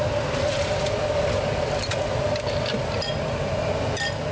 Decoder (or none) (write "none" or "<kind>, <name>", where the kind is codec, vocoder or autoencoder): none